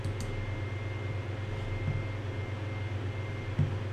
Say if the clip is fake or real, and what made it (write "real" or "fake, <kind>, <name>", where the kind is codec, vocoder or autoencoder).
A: real